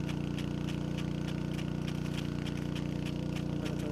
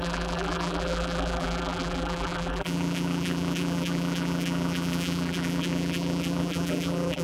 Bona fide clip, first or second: first